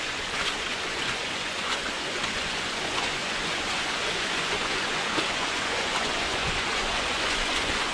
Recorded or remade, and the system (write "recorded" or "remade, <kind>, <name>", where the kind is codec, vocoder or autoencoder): remade, vocoder, Vocos